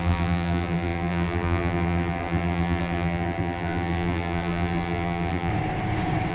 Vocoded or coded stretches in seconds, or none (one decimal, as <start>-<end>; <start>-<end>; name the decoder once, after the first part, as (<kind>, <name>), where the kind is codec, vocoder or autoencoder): 0.0-5.5 (vocoder, BigVGAN v2)